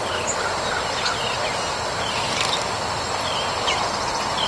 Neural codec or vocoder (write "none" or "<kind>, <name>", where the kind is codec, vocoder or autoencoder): none